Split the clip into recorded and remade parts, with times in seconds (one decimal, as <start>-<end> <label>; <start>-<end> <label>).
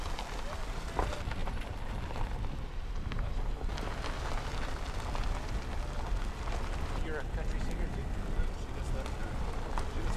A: 0.0-1.4 recorded; 1.4-3.5 remade; 3.5-10.2 recorded